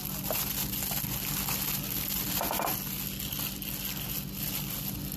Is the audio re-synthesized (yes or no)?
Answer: no